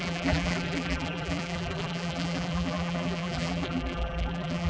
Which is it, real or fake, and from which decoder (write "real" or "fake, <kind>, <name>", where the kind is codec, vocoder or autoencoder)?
fake, vocoder, BigVGAN v2